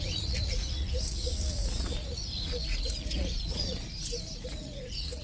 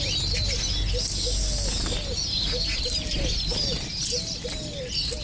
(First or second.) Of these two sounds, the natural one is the second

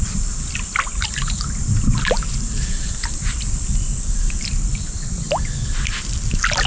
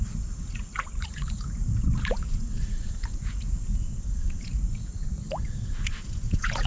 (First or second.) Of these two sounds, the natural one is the first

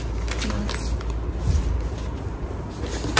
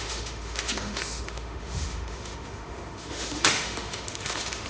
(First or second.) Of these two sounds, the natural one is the first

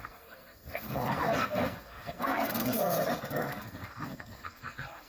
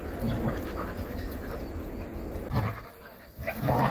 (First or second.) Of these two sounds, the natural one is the second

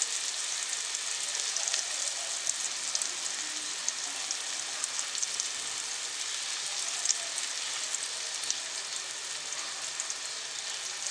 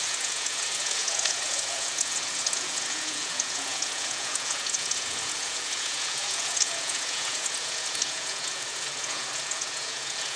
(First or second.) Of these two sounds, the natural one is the first